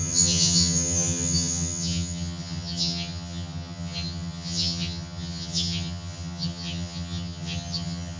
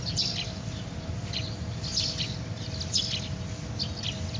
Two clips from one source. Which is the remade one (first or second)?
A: first